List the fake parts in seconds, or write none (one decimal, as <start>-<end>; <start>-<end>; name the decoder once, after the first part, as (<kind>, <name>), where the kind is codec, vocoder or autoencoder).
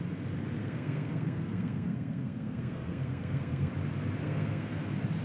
0.6-3.7 (codec, SNAC); 4.2-4.8